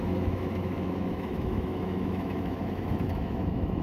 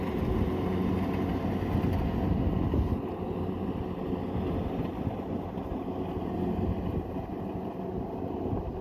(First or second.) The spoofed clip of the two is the first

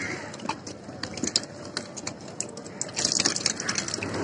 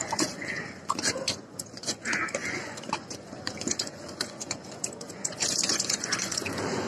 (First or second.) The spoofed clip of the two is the second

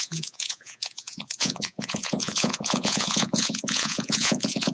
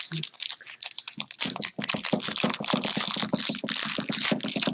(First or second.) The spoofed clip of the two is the first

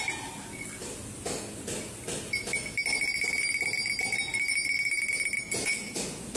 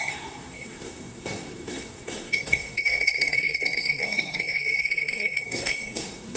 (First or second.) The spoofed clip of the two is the second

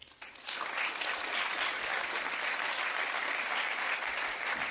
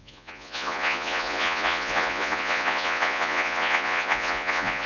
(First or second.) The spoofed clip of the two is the second